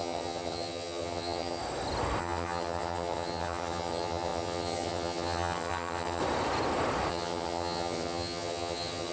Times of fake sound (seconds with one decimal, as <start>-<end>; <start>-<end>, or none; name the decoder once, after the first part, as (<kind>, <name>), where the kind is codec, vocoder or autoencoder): 0.0-1.6 (vocoder, HiFi-GAN); 2.2-6.2; 7.1-9.1